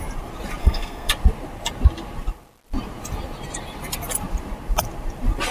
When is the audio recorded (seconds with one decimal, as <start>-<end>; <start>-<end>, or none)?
0.0-0.6; 1.1-5.5